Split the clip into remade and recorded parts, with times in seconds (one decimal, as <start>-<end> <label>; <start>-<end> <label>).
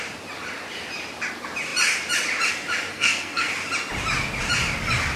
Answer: 0.0-2.9 recorded; 2.9-3.5 remade; 3.5-5.2 recorded